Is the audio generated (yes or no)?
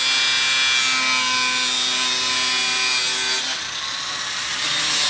no